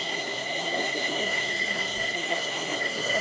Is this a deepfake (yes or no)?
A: yes